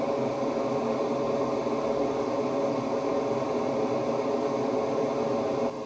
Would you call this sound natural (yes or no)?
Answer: yes